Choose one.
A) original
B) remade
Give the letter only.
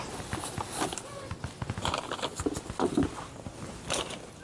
A